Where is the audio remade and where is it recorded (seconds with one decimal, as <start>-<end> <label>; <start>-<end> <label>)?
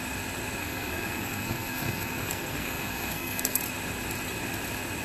0.0-0.6 recorded; 0.6-3.6 remade; 3.6-5.0 recorded